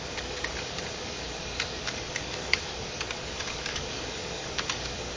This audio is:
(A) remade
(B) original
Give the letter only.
A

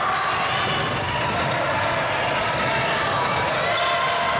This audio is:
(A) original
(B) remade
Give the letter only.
A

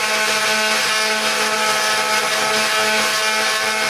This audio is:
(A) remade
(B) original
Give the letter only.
B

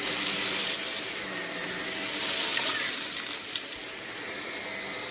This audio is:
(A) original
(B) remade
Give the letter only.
A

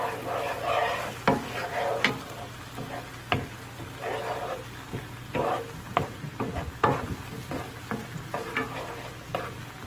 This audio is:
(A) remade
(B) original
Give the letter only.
B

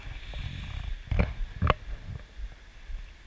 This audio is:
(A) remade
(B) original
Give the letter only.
B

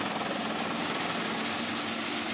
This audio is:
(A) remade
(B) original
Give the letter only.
B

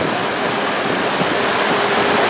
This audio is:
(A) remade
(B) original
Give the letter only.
B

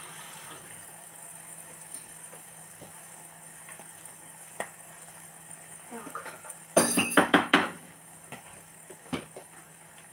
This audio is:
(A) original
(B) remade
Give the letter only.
B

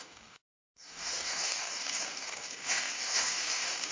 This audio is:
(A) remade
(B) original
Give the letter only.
A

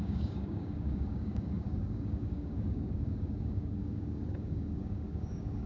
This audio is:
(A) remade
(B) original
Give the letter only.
A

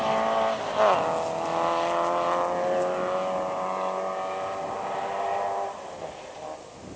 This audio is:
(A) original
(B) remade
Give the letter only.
A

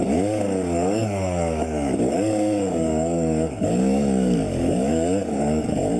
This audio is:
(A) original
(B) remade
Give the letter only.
B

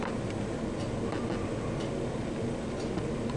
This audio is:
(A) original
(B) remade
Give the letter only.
A